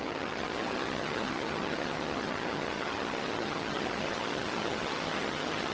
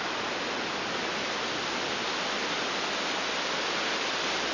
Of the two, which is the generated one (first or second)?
first